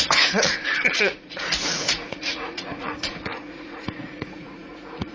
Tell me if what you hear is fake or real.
fake